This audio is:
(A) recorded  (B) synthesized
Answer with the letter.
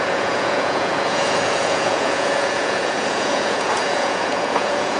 B